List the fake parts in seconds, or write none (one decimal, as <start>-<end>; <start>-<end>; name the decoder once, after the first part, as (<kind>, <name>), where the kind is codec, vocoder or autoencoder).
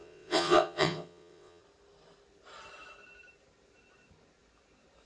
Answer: 0.0-1.6 (vocoder, WaveNeXt)